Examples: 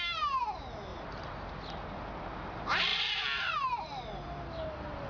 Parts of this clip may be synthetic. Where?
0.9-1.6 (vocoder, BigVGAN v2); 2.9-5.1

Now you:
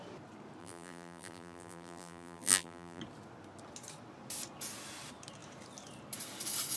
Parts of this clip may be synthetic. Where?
0.6-3.0 (vocoder, BigVGAN v2)

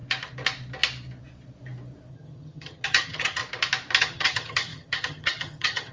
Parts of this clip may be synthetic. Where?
2.1-3.4 (vocoder, HiFi-GAN); 4.0-5.9

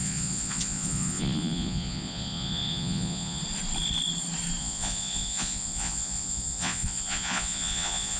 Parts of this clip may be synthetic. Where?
0.0-3.4 (vocoder, Vocos); 4.6-8.2